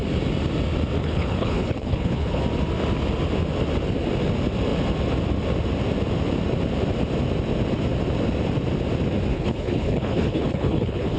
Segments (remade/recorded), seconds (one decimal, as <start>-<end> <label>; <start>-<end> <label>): 0.0-1.0 recorded; 1.0-2.4 remade; 2.4-9.3 recorded; 9.3-11.2 remade